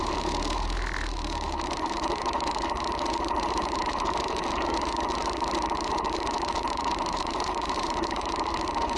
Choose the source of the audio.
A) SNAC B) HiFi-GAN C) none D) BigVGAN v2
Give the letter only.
D